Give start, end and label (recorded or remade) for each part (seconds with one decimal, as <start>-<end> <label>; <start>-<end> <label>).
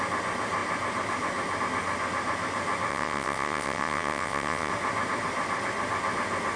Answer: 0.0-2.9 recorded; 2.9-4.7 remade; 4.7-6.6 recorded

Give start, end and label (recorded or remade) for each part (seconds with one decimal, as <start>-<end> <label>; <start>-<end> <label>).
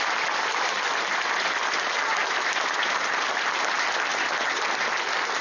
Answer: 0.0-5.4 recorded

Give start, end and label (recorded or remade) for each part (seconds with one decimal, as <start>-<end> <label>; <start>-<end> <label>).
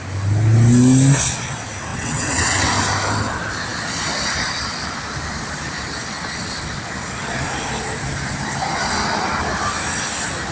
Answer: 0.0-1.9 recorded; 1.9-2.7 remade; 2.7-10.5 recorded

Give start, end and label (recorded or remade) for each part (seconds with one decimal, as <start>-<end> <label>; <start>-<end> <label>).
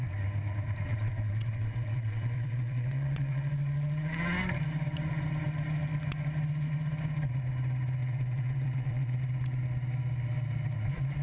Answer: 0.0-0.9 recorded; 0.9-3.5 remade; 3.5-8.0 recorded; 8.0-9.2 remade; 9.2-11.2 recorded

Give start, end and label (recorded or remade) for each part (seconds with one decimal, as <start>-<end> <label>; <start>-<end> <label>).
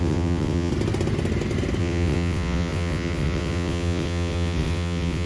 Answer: 0.0-0.7 remade; 0.7-1.8 recorded; 1.8-5.3 remade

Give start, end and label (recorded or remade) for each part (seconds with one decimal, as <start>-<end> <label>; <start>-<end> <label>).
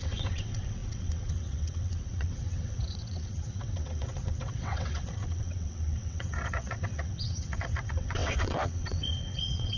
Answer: 0.0-9.8 remade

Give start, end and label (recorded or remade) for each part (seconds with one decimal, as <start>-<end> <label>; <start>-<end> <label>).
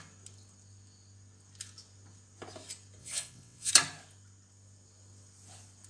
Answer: 0.0-3.0 recorded; 3.0-3.7 remade; 3.7-5.9 recorded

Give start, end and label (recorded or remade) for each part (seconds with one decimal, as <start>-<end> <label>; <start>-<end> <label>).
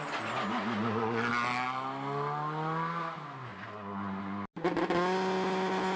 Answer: 0.0-6.0 recorded